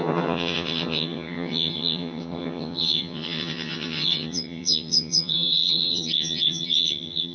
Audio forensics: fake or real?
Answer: fake